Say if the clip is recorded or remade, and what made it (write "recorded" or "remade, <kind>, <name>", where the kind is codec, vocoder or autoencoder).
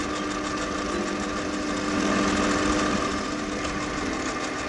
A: recorded